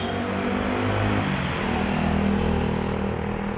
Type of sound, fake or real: real